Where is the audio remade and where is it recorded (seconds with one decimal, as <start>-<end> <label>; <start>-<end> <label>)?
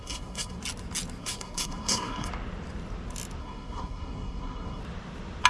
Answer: 0.0-0.6 remade; 0.6-1.2 recorded; 1.2-2.3 remade; 2.3-3.4 recorded; 3.4-4.8 remade; 4.8-5.5 recorded